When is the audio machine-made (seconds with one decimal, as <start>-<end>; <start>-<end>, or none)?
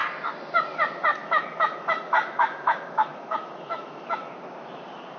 1.2-4.3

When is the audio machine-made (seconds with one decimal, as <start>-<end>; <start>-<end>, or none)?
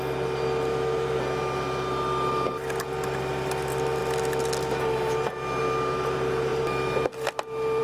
0.7-1.2